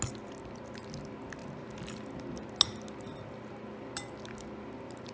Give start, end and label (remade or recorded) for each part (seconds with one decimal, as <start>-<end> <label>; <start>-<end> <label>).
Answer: 0.0-5.1 recorded